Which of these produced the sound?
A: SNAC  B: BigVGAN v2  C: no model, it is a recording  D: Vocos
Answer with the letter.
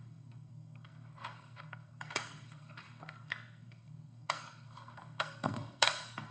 A